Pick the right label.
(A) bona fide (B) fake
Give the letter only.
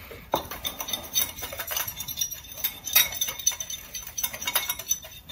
B